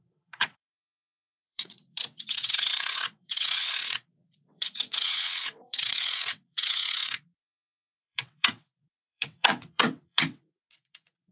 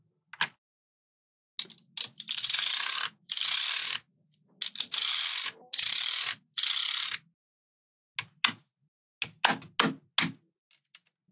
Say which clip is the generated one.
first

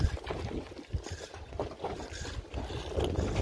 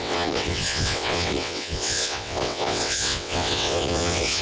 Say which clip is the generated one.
second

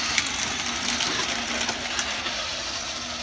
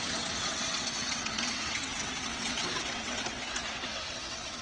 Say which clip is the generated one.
second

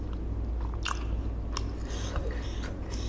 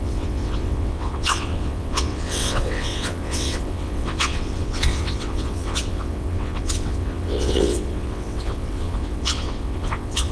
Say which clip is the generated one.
second